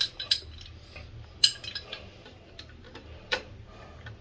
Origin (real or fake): real